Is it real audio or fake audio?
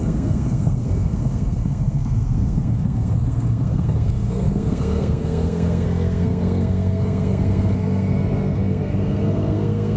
fake